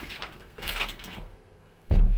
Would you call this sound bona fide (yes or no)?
no